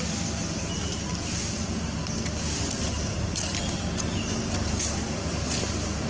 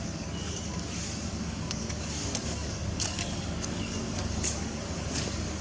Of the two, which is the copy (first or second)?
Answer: second